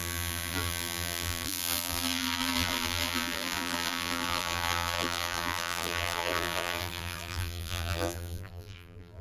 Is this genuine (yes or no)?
no